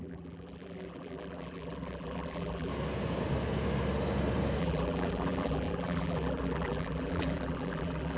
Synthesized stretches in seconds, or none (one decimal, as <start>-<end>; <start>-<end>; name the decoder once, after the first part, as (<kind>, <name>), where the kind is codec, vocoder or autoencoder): 0.0-2.7 (vocoder, BigVGAN v2); 4.6-8.2